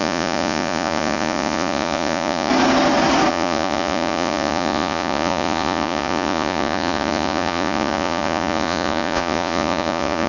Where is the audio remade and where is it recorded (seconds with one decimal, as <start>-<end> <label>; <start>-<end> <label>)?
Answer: 0.0-2.5 remade; 2.5-3.3 recorded; 3.3-10.3 remade